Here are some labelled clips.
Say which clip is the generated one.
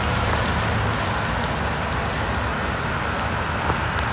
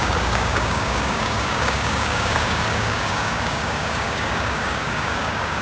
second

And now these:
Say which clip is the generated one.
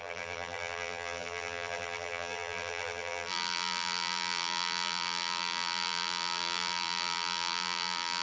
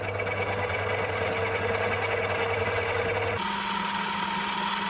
first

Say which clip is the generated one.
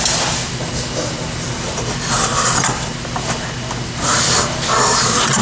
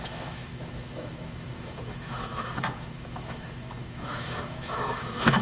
second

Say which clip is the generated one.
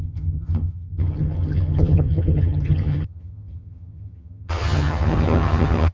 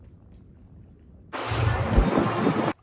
first